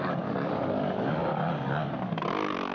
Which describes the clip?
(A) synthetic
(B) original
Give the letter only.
A